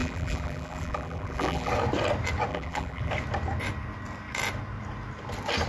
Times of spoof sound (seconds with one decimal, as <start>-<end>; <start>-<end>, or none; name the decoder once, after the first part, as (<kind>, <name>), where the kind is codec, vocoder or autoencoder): 0.0-1.7 (vocoder, BigVGAN v2); 2.5-3.1